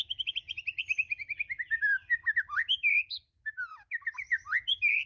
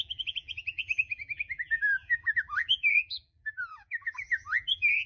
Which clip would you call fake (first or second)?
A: second